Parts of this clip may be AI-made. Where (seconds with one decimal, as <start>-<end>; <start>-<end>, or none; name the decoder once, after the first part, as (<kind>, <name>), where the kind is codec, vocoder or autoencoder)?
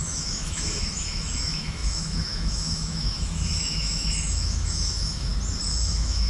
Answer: 0.0-5.3 (autoencoder, DAC-VAE); 5.8-6.3